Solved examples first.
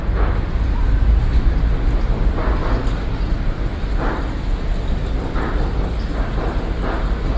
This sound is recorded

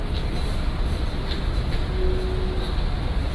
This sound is recorded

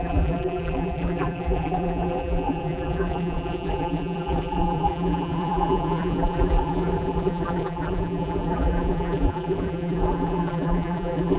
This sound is remade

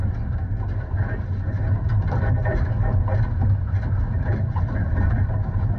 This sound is remade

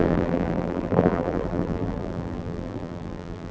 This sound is remade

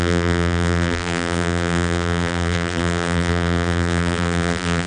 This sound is remade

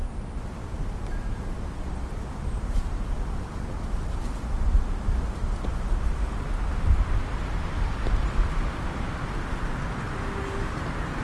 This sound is recorded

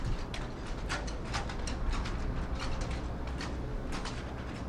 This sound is recorded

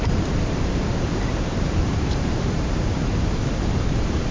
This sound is remade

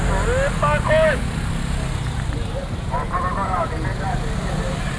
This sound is recorded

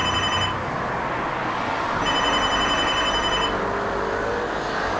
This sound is recorded